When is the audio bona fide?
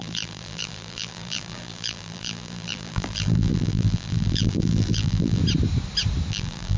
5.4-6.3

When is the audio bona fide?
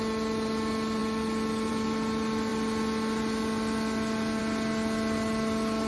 0.0-5.9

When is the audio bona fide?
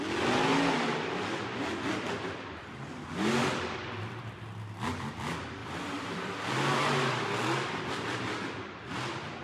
0.0-5.6; 6.8-9.4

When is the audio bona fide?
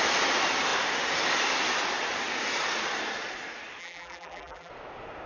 0.0-3.8; 4.7-5.3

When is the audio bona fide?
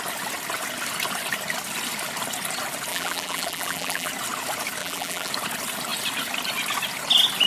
0.0-2.9; 4.1-4.8; 5.3-7.5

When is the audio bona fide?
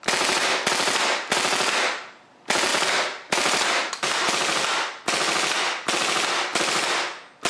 0.0-2.7; 3.9-7.5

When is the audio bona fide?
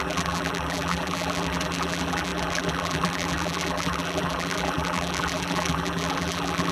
none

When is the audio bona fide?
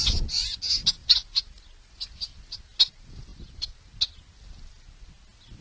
0.0-1.0; 1.5-3.3; 3.8-5.6